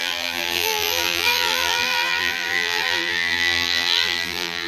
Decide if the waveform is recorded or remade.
remade